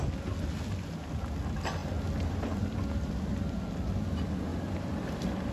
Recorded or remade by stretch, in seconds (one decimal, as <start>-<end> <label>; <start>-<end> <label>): 0.0-4.5 recorded; 4.5-5.5 remade